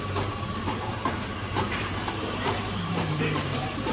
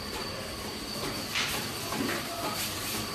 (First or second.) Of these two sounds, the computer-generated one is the first